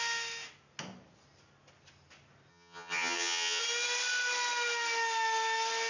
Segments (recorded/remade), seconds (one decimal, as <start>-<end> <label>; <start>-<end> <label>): 0.0-2.5 recorded; 2.5-3.6 remade; 3.6-5.9 recorded